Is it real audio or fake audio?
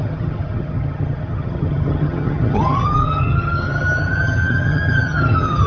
fake